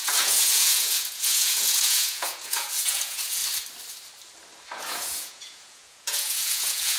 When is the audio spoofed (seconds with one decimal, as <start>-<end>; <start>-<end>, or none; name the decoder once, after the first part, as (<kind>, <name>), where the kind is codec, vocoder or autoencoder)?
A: 0.0-3.4 (vocoder, Vocos); 4.8-7.0